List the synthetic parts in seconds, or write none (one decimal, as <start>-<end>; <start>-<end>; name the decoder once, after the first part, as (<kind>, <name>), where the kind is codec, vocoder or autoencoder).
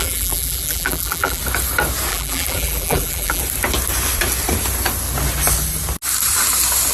0.0-1.4 (vocoder, BigVGAN v2); 2.1-3.4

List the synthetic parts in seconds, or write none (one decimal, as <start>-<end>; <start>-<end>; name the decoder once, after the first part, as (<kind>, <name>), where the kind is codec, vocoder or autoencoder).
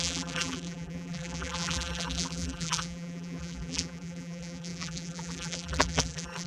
0.0-6.5 (vocoder, BigVGAN v2)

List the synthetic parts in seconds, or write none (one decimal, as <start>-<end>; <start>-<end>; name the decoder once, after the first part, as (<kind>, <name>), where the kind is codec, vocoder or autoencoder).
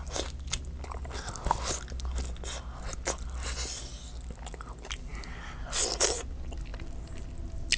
none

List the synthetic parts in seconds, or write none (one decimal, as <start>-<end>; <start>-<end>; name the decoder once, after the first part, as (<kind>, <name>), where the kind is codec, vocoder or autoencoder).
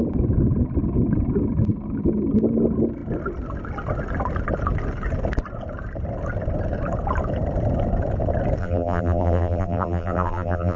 8.6-10.8 (vocoder, BigVGAN v2)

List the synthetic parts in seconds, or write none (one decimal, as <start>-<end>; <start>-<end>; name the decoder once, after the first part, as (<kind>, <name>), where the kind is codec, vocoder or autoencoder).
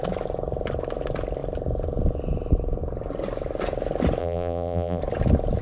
4.2-5.0 (vocoder, BigVGAN v2)